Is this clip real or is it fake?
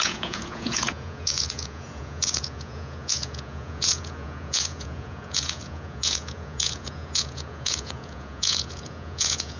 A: fake